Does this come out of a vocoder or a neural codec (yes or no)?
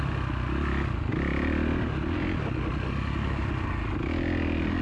no